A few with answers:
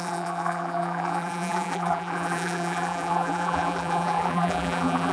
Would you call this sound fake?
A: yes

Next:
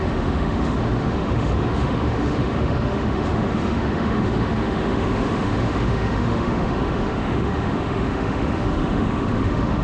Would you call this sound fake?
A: yes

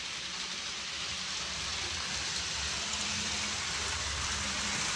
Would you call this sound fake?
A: no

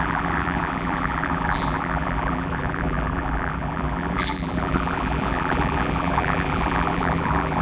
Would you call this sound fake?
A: yes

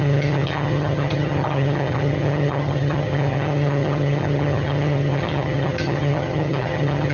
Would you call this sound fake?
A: yes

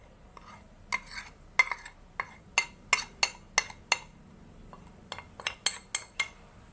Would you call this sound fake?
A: no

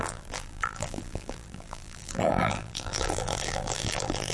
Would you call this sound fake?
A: yes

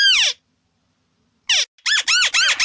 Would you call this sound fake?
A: no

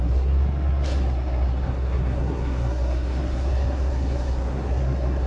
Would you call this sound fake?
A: yes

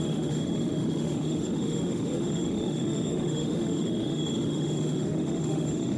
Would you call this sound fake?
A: yes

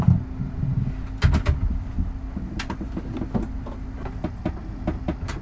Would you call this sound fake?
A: no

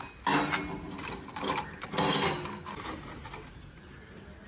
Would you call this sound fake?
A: no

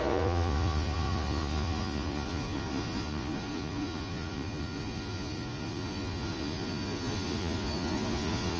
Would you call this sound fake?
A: yes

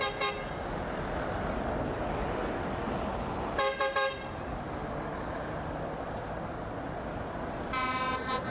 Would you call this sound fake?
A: no